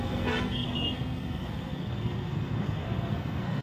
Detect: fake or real fake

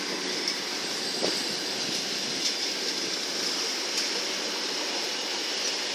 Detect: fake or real real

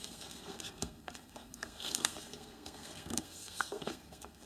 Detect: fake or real fake